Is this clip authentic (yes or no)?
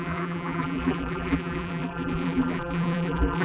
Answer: no